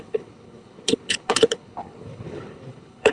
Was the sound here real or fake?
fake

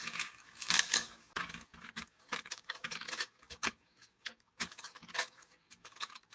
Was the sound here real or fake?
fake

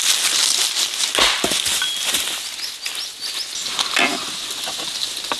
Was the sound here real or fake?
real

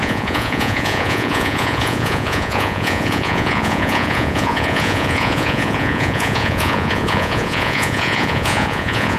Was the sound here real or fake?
fake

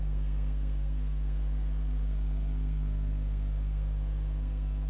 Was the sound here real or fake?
fake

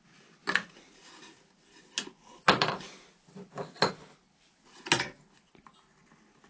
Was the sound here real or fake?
real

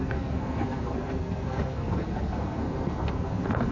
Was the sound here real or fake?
fake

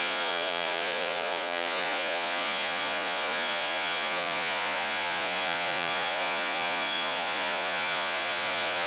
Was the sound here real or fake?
fake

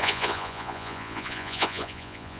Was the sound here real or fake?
fake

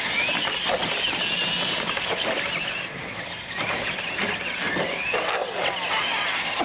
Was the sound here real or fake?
real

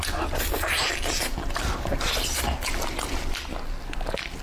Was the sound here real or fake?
real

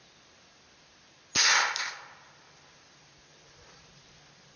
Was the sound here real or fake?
real